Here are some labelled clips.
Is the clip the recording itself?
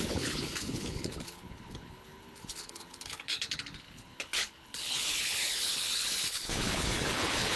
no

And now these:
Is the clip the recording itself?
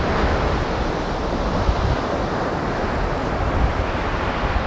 yes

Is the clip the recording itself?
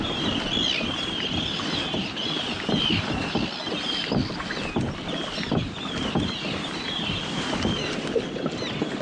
yes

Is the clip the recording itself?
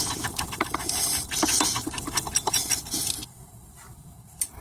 no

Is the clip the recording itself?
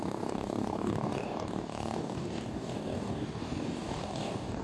no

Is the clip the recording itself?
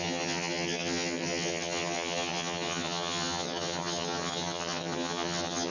no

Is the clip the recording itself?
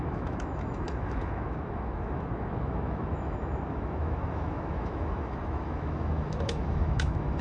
no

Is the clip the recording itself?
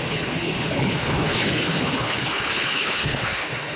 no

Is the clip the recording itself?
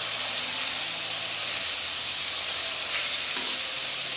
yes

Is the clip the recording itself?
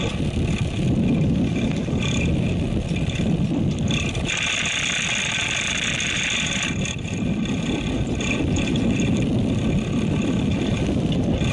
yes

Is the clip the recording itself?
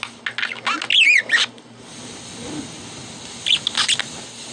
yes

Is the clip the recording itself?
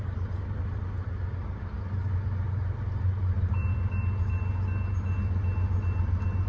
yes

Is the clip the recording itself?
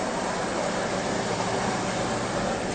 yes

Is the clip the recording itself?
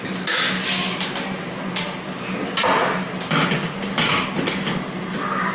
yes